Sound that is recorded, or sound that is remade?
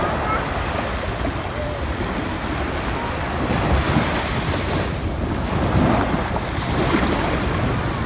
recorded